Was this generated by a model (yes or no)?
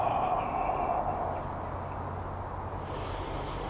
no